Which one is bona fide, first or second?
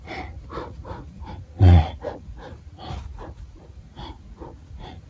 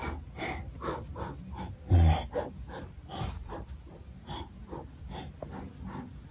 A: second